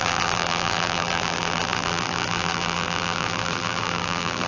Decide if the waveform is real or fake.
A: fake